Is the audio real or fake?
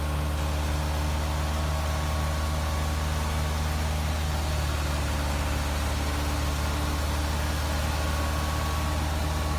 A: real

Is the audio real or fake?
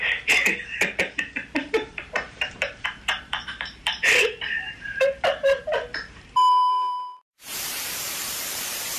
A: fake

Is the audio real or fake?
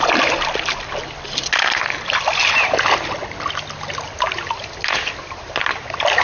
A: real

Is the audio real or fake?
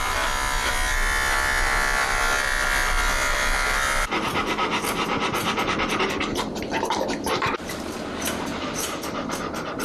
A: real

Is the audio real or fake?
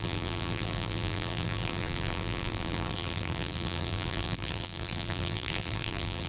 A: fake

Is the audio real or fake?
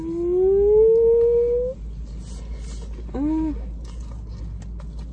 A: real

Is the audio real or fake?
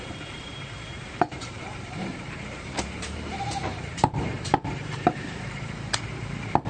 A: fake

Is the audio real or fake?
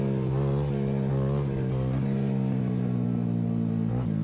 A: real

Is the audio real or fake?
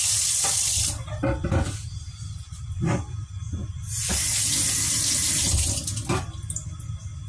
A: real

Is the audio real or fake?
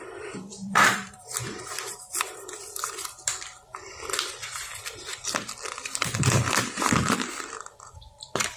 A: fake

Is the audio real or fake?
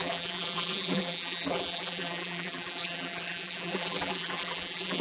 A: fake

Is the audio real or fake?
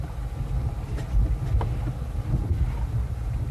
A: real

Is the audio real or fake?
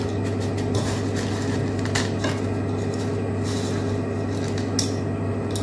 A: real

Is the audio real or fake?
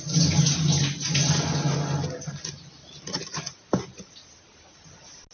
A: real